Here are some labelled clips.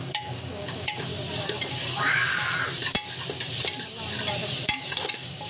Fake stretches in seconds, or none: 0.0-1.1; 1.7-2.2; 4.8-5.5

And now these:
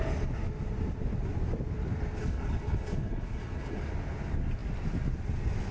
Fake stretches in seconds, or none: 2.2-3.8

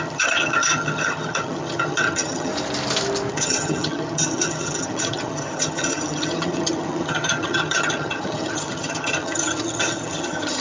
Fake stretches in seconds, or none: 0.0-2.5; 3.3-10.6

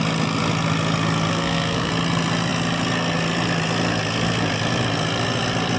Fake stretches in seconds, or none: 1.3-1.9